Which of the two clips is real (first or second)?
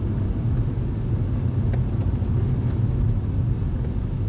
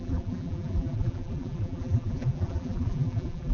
first